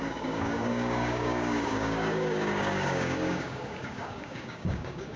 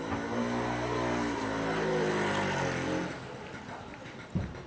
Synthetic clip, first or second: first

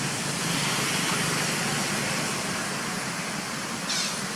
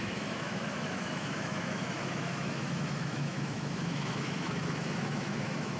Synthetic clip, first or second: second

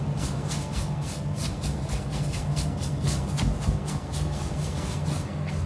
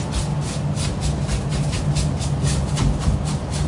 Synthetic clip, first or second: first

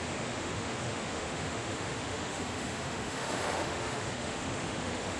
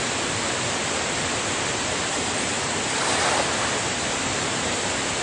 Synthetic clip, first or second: first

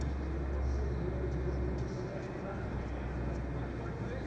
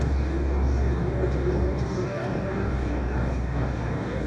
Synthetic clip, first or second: second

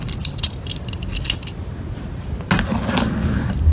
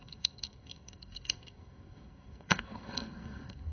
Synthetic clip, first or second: second